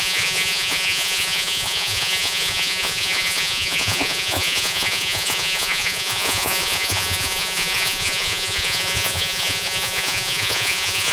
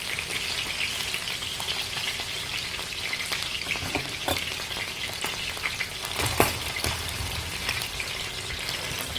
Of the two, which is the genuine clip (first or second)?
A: second